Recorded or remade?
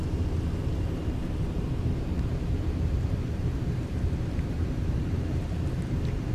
remade